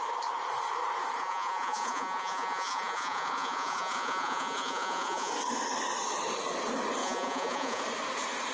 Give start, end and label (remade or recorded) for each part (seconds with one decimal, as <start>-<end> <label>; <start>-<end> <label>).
0.0-1.2 recorded; 1.2-5.3 remade; 5.3-7.0 recorded; 7.0-7.8 remade; 7.8-8.5 recorded